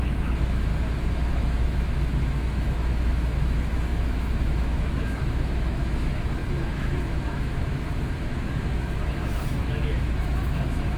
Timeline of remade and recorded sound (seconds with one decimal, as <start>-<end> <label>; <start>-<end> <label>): 0.0-0.7 remade; 0.7-1.3 recorded; 1.3-11.0 remade